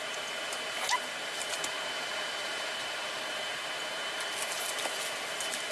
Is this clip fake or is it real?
fake